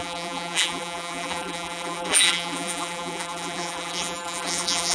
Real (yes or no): no